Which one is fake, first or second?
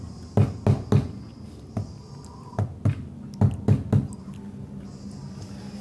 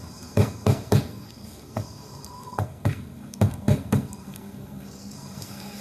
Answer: second